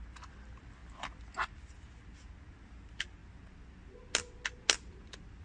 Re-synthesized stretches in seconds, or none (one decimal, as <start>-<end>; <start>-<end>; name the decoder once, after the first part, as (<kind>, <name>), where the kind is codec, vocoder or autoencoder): none